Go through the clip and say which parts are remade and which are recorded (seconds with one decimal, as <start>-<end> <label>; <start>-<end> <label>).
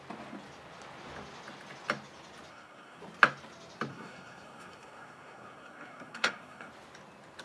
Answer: 0.0-2.5 recorded; 2.5-3.0 remade; 3.0-3.9 recorded; 3.9-6.7 remade; 6.7-7.4 recorded